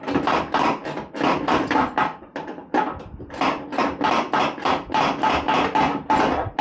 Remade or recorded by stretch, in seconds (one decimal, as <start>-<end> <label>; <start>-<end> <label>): 0.0-6.6 recorded